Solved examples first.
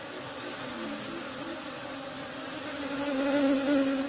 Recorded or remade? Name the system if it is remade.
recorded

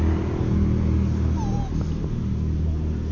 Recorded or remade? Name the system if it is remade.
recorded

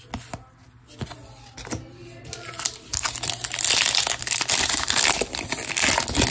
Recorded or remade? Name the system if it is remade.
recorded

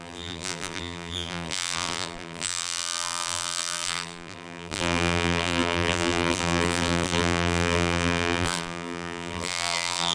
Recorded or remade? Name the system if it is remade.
remade, vocoder, BigVGAN v2